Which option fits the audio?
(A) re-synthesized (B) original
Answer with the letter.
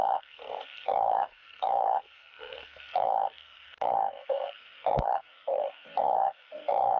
A